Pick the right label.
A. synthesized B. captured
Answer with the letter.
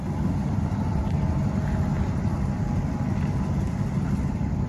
B